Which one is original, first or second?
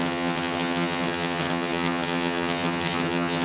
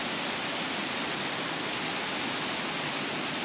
second